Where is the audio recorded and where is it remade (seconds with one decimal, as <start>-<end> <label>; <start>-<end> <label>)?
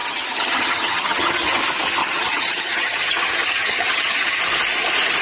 0.0-1.6 remade; 1.6-2.0 recorded; 2.0-4.4 remade; 4.4-5.2 recorded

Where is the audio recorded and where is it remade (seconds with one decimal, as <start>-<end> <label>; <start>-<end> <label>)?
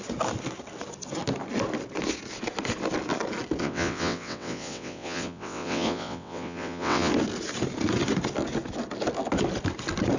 0.0-3.6 recorded; 3.6-7.1 remade; 7.1-10.2 recorded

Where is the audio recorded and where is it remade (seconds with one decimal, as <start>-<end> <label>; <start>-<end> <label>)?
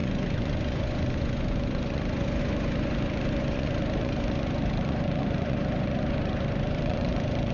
0.0-7.5 remade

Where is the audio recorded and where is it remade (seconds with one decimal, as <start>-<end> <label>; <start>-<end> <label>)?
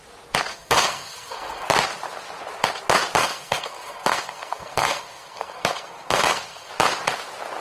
0.0-0.5 recorded; 0.5-1.7 remade; 1.7-3.2 recorded; 3.2-6.7 remade; 6.7-7.6 recorded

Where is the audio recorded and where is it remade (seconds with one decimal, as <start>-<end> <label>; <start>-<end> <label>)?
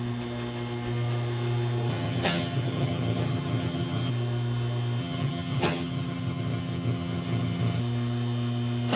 0.0-1.9 recorded; 1.9-4.1 remade; 4.1-5.0 recorded; 5.0-7.8 remade; 7.8-9.0 recorded